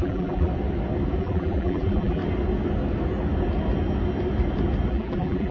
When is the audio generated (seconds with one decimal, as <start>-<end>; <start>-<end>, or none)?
0.0-0.5; 1.2-2.2; 4.9-5.5